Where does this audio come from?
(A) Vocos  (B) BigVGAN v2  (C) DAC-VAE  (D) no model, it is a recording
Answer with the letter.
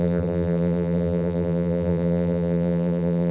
B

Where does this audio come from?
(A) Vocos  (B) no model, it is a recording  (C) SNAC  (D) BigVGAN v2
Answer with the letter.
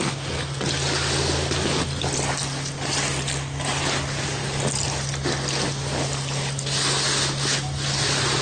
B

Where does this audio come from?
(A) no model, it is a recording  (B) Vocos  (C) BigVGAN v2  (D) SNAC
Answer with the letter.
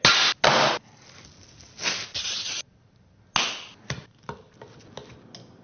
A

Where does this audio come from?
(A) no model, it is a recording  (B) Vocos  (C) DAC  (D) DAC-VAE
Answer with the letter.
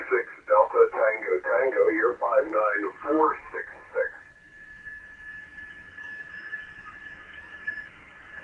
C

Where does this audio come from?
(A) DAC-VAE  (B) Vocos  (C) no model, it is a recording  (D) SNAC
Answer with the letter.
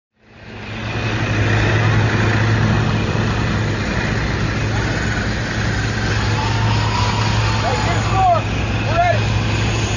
C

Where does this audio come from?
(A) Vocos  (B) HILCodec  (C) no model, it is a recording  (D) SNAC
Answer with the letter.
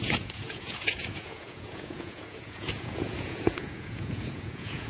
A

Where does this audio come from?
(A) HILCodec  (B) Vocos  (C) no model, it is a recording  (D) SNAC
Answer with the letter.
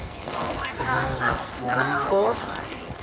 D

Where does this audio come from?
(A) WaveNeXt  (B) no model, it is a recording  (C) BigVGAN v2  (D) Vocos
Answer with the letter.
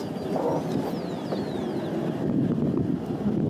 B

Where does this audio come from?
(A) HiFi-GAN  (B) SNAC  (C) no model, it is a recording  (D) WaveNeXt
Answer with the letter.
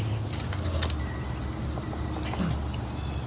C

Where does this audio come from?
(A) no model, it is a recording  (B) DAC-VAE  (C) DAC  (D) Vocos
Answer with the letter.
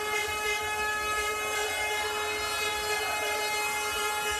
A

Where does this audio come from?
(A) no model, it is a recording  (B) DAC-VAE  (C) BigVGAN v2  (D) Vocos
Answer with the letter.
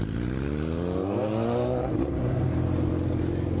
A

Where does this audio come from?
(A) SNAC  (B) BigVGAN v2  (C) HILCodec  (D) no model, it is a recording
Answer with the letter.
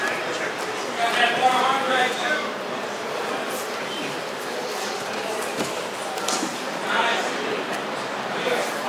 B